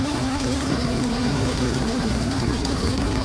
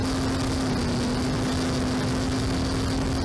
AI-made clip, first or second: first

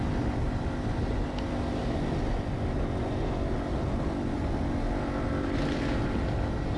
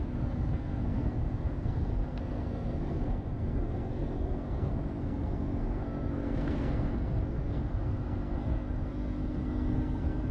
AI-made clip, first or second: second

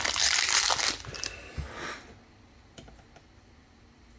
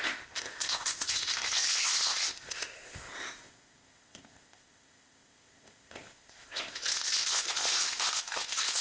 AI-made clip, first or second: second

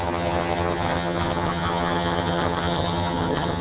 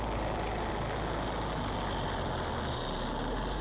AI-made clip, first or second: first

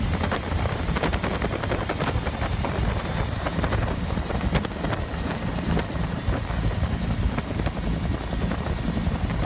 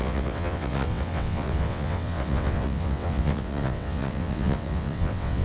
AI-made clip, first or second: second